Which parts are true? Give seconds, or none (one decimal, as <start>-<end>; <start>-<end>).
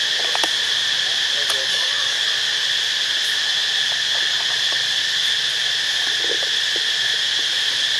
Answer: 0.0-1.6; 2.2-8.0